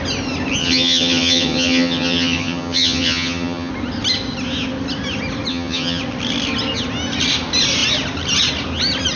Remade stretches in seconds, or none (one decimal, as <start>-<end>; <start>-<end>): 0.6-3.7; 5.5-6.0